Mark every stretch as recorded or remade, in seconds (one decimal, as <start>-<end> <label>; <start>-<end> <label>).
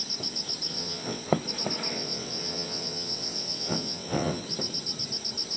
0.0-0.7 recorded; 0.7-1.2 remade; 1.2-1.9 recorded; 1.9-4.4 remade; 4.4-5.6 recorded